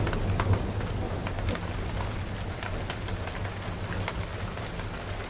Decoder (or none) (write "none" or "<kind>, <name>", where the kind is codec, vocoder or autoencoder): none